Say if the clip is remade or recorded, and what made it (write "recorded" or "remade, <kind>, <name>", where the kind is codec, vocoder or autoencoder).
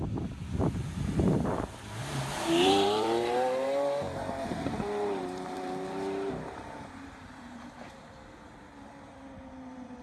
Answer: remade, vocoder, BigVGAN v2